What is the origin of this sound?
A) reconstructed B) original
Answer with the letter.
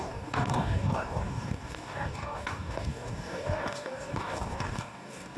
A